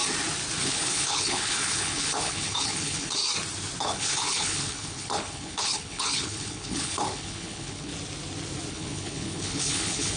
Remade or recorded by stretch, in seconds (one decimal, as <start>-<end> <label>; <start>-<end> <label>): 0.0-0.6 recorded; 0.6-3.2 remade; 3.2-3.8 recorded; 3.8-7.9 remade; 7.9-8.7 recorded; 8.7-10.2 remade

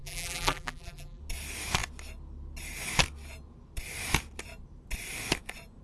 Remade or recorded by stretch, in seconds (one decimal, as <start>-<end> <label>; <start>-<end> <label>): 0.0-1.2 remade; 1.2-5.8 recorded

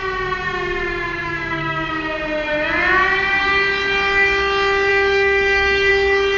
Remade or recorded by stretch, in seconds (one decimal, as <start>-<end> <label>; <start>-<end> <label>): 0.0-1.1 recorded; 1.1-1.9 remade; 1.9-4.9 recorded; 4.9-5.9 remade; 5.9-6.4 recorded

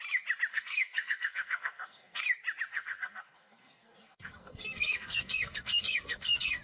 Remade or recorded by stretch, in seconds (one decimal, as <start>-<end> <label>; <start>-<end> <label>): 0.0-0.5 recorded; 0.5-2.2 remade; 2.2-2.7 recorded; 2.7-6.6 remade

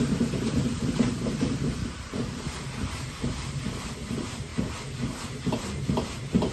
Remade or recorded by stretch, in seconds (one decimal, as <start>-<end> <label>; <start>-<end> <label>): 0.0-4.5 remade; 4.5-5.5 recorded; 5.5-6.5 remade

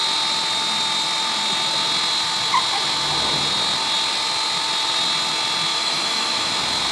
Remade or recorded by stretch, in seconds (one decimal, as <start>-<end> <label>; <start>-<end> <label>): 0.0-5.7 recorded; 5.7-6.5 remade; 6.5-6.9 recorded

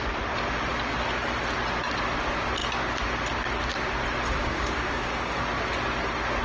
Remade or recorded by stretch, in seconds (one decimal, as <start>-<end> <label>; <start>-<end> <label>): 0.0-4.4 recorded; 4.4-5.4 remade; 5.4-6.4 recorded

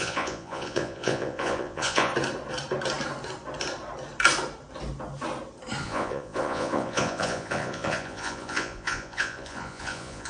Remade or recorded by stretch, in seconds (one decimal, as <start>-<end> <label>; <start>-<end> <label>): 0.0-2.1 remade; 2.1-5.8 recorded; 5.8-10.3 remade